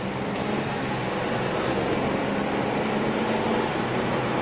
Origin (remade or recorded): recorded